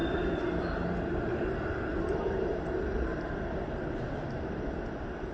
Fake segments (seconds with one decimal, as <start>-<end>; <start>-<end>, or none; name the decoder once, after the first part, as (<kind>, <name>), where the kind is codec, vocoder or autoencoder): none